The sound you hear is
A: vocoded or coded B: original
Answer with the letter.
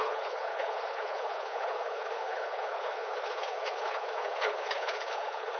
A